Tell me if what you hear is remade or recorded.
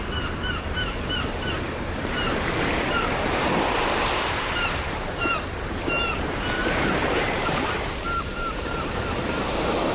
remade